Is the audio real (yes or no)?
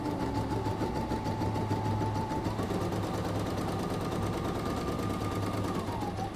yes